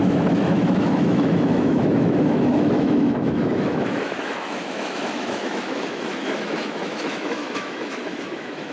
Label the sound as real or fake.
fake